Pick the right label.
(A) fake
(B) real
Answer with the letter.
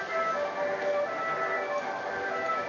B